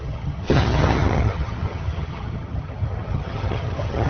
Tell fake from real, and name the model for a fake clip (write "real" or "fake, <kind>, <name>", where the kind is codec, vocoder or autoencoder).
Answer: fake, vocoder, HiFi-GAN